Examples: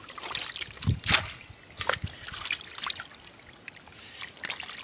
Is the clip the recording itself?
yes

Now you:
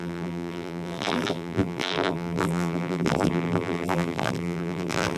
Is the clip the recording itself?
no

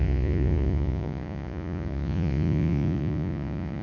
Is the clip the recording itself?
no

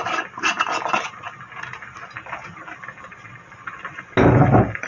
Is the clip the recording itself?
yes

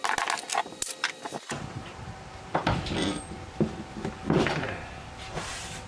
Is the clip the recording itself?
yes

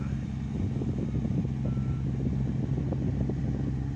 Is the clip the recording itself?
yes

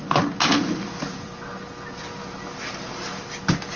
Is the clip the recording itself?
yes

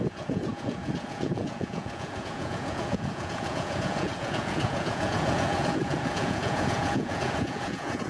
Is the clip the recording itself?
no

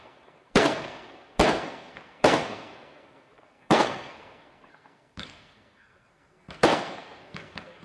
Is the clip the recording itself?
no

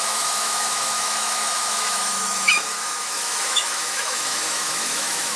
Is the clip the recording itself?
no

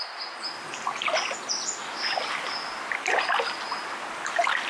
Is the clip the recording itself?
yes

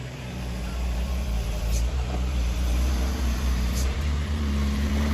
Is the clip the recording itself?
no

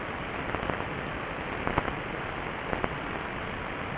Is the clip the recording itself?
yes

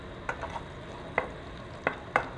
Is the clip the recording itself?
yes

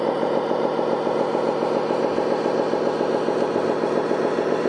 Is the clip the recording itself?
yes